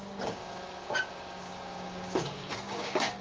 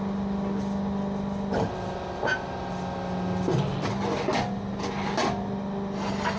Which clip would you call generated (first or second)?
first